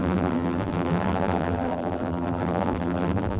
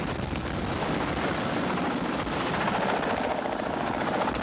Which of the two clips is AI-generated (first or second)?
first